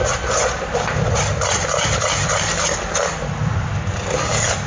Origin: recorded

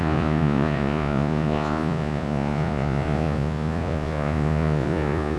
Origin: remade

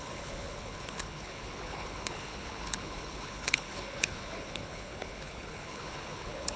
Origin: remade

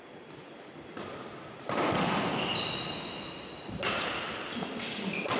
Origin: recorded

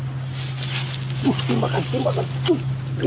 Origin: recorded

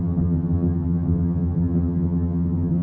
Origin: remade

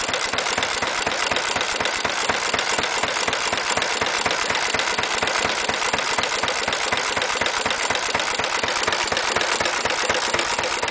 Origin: recorded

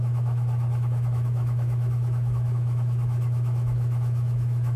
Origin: remade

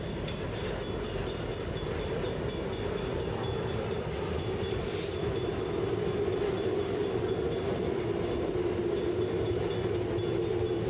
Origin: recorded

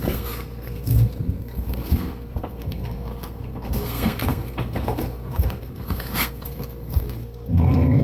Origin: remade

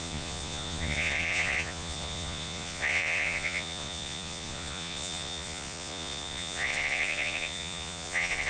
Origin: remade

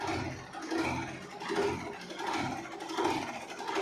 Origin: recorded